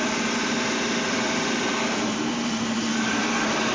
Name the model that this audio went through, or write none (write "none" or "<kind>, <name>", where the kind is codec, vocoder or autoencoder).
vocoder, BigVGAN v2